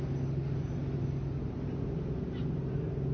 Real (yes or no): yes